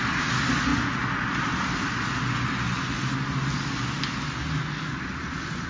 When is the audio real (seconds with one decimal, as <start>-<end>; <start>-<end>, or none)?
0.0-5.7